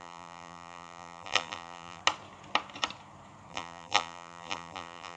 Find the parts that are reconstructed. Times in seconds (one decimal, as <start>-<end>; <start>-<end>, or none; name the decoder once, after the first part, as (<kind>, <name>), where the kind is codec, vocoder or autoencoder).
0.0-2.0 (vocoder, BigVGAN v2); 3.5-5.2